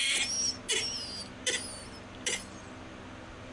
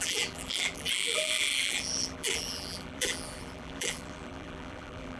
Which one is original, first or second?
first